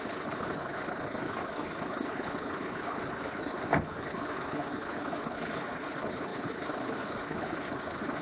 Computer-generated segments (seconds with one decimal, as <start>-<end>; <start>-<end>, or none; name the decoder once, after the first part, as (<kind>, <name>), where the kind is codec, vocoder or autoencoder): 0.0-8.2 (codec, HILCodec)